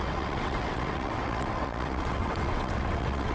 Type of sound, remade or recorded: remade